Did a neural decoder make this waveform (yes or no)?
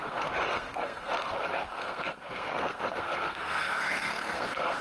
yes